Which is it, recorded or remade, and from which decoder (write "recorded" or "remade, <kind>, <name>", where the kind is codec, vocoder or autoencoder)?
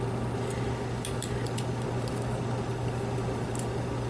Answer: recorded